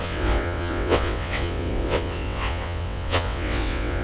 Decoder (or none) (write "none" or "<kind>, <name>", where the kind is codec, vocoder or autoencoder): vocoder, WaveNeXt